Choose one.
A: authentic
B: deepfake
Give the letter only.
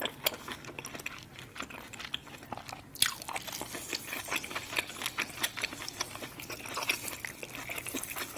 A